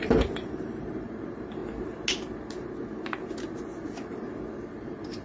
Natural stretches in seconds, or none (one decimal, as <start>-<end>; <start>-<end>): 1.6-4.7

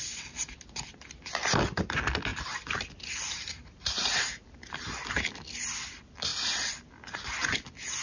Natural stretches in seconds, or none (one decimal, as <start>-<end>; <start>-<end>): 0.0-8.0

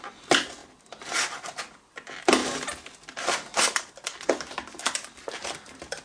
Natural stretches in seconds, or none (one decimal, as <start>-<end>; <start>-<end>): 0.6-1.4

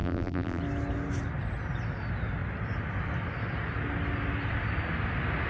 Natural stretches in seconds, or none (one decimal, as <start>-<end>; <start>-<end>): 0.6-5.5

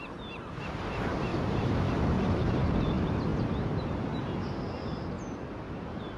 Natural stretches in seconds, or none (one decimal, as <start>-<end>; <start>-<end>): none

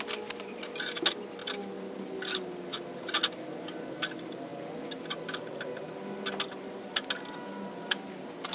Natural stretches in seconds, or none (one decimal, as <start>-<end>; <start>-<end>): 0.0-8.5

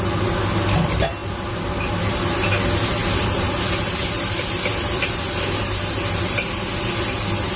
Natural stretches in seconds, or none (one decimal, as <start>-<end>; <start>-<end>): 0.0-3.0; 6.4-7.6